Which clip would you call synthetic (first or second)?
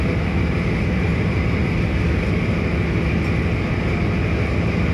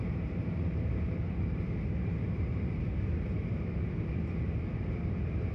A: second